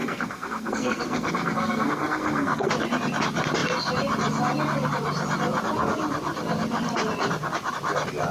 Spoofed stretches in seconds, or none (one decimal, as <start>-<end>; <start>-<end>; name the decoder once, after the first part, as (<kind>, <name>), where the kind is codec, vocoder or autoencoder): 0.0-2.7 (codec, SNAC)